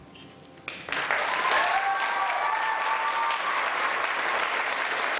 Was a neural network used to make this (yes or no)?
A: no